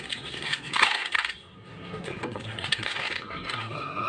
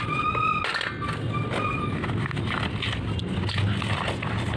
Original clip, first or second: second